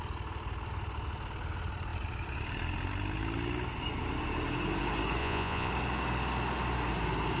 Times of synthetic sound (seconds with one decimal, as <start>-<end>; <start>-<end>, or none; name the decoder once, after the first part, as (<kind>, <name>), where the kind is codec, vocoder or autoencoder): 5.2-5.7 (vocoder, Vocos)